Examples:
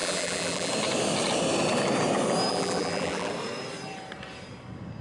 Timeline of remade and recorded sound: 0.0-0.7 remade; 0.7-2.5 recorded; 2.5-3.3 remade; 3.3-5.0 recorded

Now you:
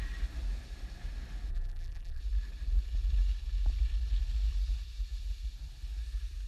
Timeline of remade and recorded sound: 0.0-1.5 recorded; 1.5-2.2 remade; 2.2-6.5 recorded

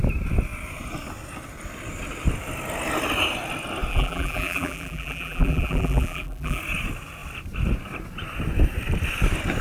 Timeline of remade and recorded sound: 0.0-3.9 recorded; 3.9-6.6 remade; 6.6-9.6 recorded

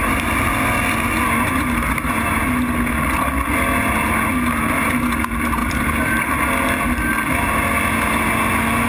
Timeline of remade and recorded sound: 0.0-5.6 recorded; 5.6-6.3 remade; 6.3-8.9 recorded